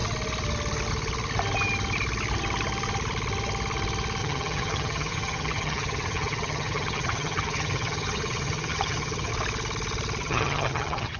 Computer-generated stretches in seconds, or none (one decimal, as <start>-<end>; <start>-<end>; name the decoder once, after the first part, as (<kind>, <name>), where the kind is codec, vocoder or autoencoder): 4.2-9.3 (vocoder, HiFi-GAN); 10.2-11.2